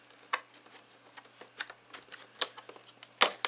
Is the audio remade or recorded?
recorded